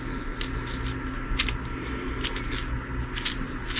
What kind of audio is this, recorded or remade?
recorded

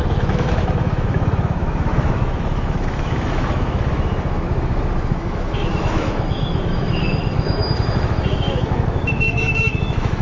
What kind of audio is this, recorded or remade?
remade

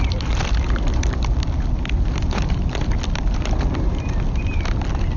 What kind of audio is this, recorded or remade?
remade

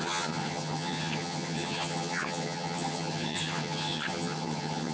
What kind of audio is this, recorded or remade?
remade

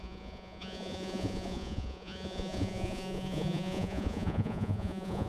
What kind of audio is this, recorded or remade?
remade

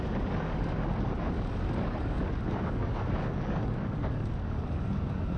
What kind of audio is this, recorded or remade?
remade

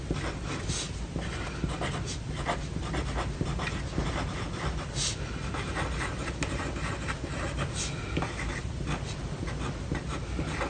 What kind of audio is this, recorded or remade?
recorded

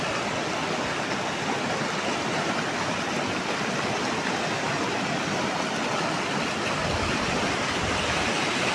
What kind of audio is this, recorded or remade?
recorded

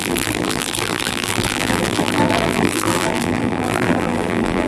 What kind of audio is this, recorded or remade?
remade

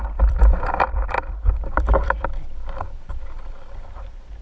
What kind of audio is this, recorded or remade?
remade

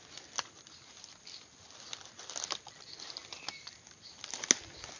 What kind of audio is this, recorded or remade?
recorded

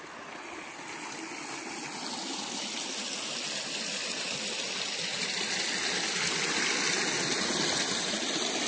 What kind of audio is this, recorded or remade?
recorded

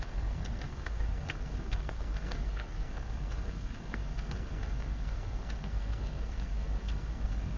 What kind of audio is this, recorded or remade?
remade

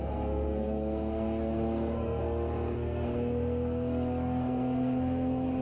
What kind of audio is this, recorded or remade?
remade